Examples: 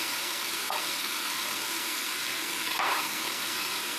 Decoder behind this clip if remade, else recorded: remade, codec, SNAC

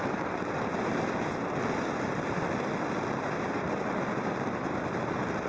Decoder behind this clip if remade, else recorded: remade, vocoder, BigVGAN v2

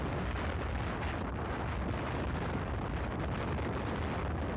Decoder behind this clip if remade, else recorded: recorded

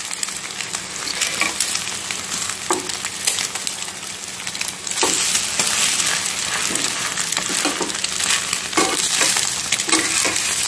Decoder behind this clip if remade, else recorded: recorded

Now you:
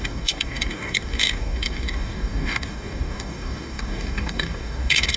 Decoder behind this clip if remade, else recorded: remade, codec, DAC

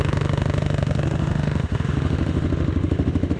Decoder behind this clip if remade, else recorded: remade, autoencoder, DAC-VAE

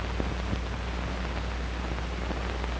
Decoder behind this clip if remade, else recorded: recorded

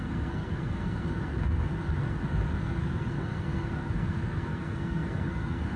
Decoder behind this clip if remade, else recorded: remade, codec, SNAC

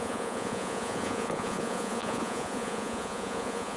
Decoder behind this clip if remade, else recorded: remade, vocoder, Vocos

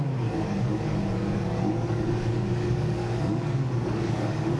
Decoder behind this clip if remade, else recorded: remade, codec, DAC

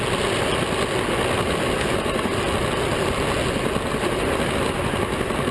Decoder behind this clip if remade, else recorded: recorded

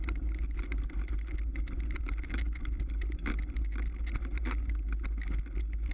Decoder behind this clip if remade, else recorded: recorded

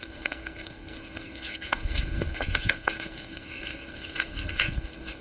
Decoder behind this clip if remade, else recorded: remade, codec, SNAC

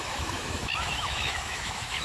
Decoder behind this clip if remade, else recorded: remade, autoencoder, DAC-VAE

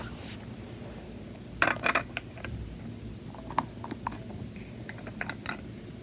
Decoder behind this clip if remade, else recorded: recorded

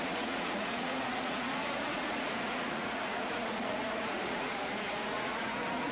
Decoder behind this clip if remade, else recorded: remade, vocoder, Vocos